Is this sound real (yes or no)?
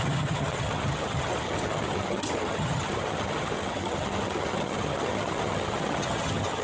no